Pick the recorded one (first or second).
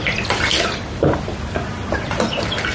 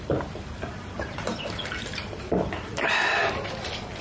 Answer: first